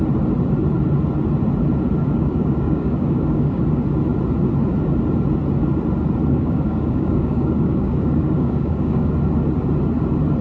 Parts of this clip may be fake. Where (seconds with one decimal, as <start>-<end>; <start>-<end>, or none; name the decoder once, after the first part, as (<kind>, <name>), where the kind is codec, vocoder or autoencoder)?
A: 2.0-3.6 (codec, DAC); 6.2-9.1